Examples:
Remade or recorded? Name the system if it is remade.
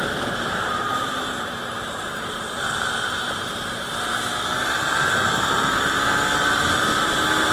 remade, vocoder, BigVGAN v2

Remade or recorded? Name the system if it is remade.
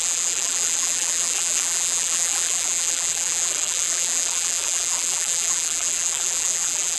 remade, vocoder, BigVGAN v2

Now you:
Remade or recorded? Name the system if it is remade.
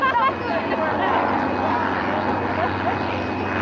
recorded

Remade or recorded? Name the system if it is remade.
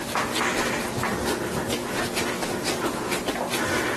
recorded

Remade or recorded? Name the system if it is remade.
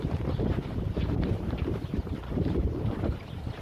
remade, vocoder, BigVGAN v2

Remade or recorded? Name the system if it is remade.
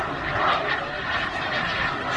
recorded